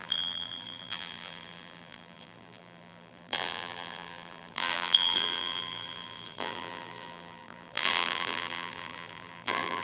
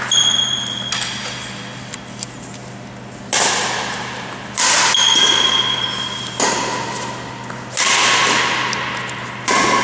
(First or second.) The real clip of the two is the second